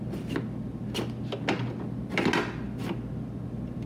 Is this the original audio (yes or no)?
yes